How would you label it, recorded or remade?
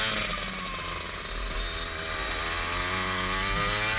recorded